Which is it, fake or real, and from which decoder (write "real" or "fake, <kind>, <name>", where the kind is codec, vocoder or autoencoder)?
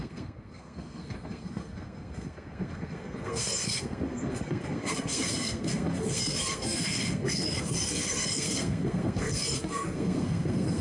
fake, codec, SNAC